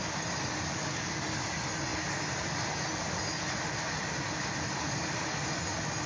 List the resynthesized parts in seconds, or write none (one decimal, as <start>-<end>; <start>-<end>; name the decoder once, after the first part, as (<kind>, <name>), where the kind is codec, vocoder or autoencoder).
none